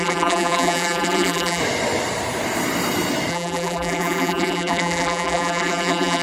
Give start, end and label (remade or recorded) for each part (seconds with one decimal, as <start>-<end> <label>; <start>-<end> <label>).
0.0-1.6 remade; 1.6-3.3 recorded; 3.3-6.2 remade